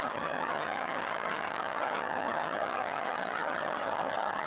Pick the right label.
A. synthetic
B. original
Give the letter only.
A